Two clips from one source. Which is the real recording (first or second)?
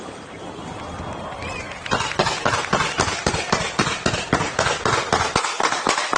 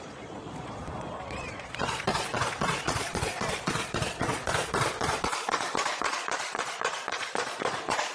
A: first